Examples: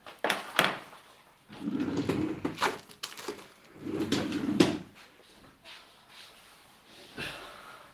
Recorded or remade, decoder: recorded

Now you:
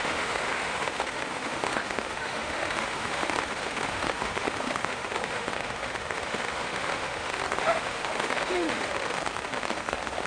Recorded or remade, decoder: remade, autoencoder, DAC-VAE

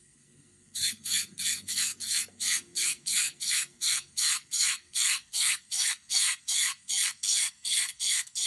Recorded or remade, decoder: remade, codec, SNAC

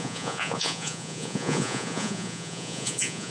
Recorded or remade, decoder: remade, vocoder, Vocos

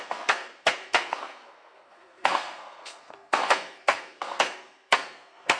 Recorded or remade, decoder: remade, codec, SNAC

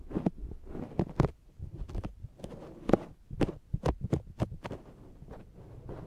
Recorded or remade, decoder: recorded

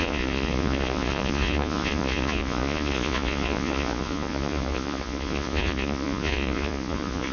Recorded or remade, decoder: remade, vocoder, Vocos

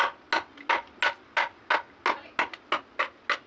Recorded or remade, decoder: recorded